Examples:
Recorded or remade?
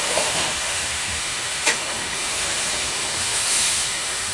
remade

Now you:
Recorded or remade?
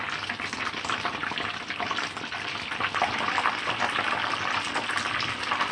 recorded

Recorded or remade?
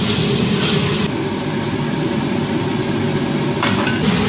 recorded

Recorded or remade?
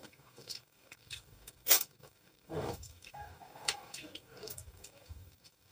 remade